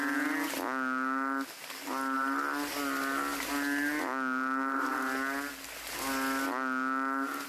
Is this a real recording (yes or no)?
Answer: yes